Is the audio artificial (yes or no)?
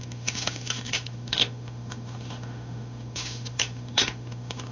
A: yes